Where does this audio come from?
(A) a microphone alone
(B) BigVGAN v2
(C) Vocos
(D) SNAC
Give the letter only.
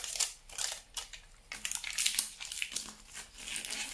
A